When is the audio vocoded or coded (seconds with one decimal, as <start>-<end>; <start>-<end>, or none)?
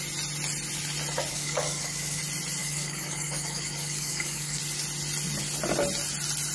1.3-2.2; 2.6-4.6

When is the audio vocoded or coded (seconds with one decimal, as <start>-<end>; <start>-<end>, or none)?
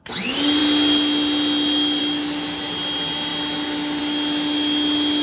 none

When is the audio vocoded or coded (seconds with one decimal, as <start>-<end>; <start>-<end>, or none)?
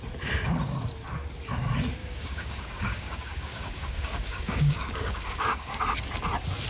2.0-5.8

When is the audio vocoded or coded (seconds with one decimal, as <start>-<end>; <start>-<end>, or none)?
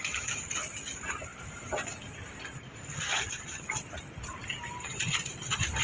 none